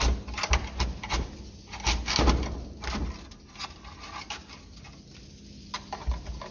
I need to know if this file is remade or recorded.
recorded